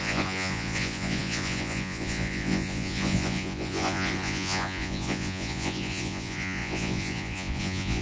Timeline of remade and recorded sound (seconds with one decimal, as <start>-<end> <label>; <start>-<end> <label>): 0.0-8.0 remade